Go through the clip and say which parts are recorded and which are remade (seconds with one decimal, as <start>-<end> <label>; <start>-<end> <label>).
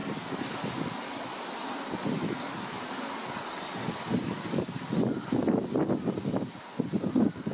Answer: 0.0-7.5 recorded